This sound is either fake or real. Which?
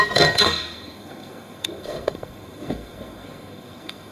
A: fake